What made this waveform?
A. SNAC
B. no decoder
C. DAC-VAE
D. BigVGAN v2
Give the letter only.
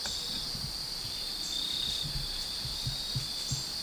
D